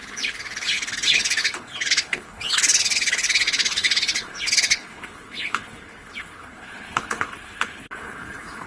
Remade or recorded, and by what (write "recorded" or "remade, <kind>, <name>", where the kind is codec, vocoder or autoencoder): remade, codec, HILCodec